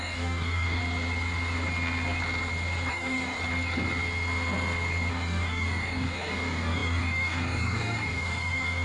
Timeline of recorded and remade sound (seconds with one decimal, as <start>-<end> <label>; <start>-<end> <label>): 0.0-0.8 remade; 0.8-2.9 recorded; 2.9-3.4 remade; 3.4-5.1 recorded; 5.1-8.8 remade